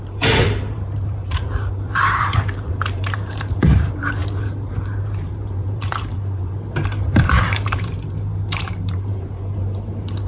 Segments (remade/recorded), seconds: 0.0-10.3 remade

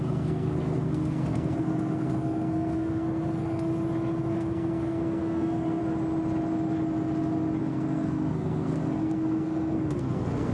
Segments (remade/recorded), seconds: 0.0-3.7 remade; 3.7-4.3 recorded; 4.3-5.8 remade; 5.8-7.6 recorded; 7.6-10.5 remade

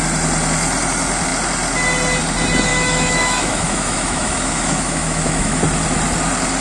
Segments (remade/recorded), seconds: 0.0-2.7 recorded; 2.7-5.6 remade; 5.6-6.6 recorded

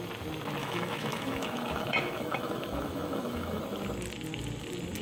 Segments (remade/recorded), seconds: 0.0-0.6 recorded; 0.6-3.6 remade; 3.6-5.0 recorded

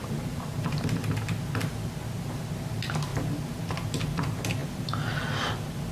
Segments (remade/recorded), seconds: 0.0-1.7 remade; 1.7-5.9 recorded

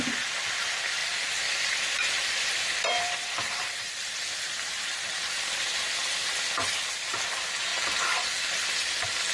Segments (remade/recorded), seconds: 0.0-1.0 recorded; 1.0-4.3 remade; 4.3-7.7 recorded; 7.7-8.7 remade; 8.7-9.3 recorded

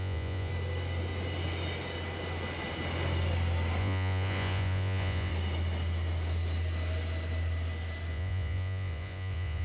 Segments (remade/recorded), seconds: 0.0-0.5 remade; 0.5-3.8 recorded; 3.8-5.3 remade; 5.3-8.1 recorded; 8.1-9.6 remade